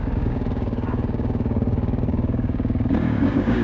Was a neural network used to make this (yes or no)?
yes